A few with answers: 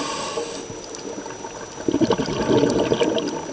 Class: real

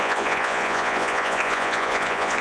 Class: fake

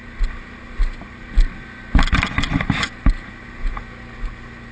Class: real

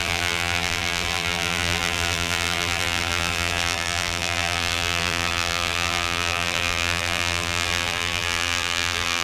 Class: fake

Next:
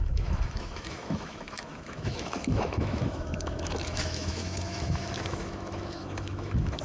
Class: fake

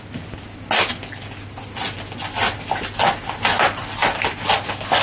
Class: real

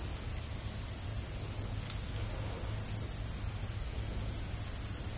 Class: real